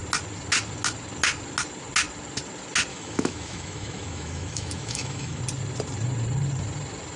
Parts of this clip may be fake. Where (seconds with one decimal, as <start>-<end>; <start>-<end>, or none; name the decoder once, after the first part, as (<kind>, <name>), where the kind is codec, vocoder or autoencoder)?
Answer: 2.9-5.4 (autoencoder, DAC-VAE)